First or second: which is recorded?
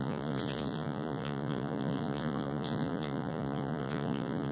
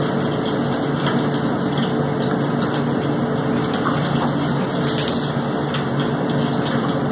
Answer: second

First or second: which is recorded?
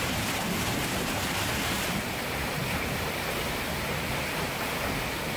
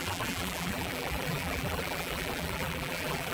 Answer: first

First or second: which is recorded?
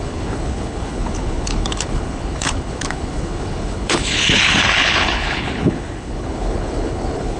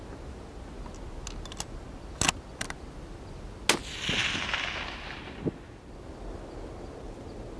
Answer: second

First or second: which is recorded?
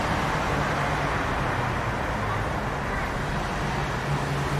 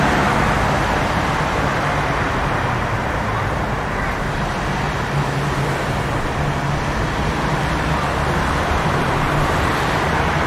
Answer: first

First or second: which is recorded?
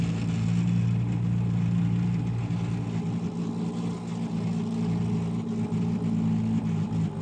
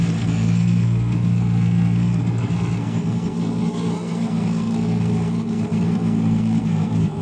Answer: first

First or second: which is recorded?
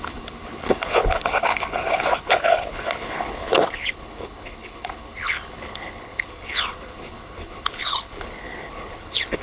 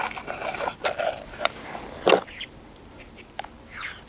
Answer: second